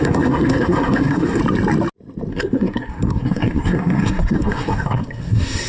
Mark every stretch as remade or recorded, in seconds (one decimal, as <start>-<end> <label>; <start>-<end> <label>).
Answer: 0.0-1.4 remade; 1.4-2.3 recorded; 2.3-5.7 remade